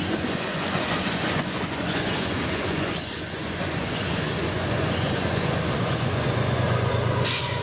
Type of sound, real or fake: fake